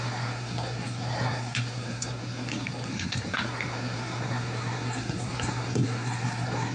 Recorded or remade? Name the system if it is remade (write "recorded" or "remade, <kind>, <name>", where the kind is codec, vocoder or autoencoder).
remade, codec, SNAC